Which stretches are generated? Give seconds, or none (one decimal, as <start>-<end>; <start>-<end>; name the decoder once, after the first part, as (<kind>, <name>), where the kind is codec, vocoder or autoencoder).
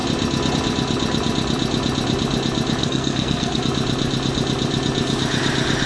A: 2.8-3.6 (codec, SNAC)